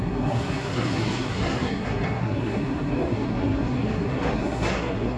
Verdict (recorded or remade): remade